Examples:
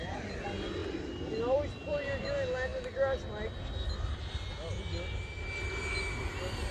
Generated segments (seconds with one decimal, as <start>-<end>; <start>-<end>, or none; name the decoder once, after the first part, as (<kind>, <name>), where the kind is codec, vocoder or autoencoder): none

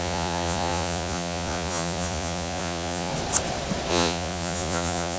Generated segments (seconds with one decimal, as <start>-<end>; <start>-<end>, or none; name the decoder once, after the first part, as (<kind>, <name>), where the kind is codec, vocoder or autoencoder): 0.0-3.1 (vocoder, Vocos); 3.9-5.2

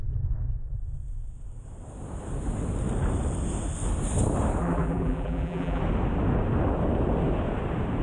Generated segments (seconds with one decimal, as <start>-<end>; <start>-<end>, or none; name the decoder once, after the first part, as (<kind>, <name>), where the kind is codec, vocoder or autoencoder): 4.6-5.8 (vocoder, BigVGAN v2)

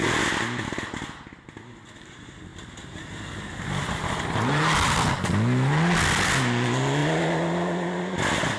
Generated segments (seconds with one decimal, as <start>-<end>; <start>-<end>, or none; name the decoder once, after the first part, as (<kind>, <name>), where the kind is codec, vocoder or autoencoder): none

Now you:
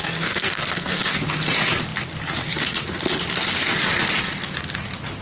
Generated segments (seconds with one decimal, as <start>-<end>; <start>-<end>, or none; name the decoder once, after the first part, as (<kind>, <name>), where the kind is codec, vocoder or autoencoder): 0.0-1.2 (codec, SNAC)

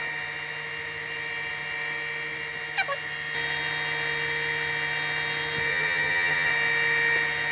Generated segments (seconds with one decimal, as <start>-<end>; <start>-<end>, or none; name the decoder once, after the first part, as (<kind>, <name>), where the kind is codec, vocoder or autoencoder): 5.7-6.5 (vocoder, HiFi-GAN)